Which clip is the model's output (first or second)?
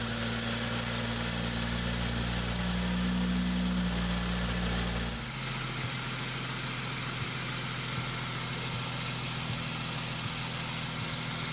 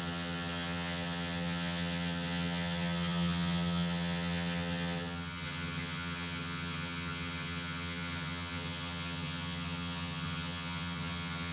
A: second